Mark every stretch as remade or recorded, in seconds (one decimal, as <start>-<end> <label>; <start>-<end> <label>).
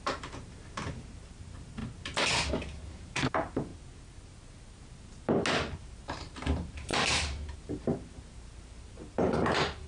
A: 0.0-1.8 remade; 1.8-2.5 recorded; 2.5-3.7 remade; 3.7-5.8 recorded; 5.8-6.9 remade; 6.9-7.5 recorded; 7.5-9.9 remade